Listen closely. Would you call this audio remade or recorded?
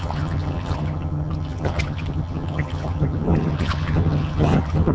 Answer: remade